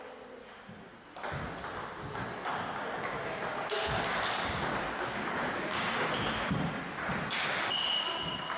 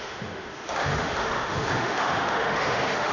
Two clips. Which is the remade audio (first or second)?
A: second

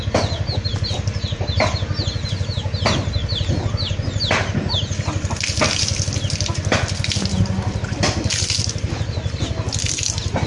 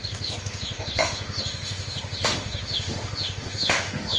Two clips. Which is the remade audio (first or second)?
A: second